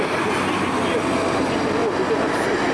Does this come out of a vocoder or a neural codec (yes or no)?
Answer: no